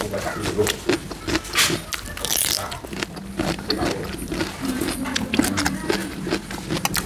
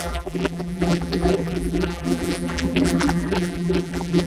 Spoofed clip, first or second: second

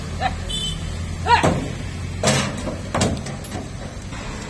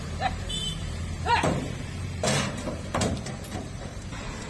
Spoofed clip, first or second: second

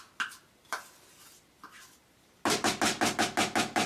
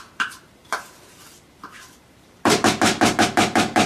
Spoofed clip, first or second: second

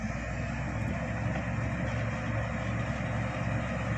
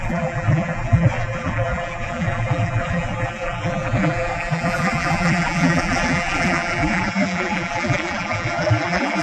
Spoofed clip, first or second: second